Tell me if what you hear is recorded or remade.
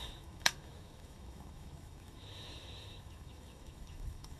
remade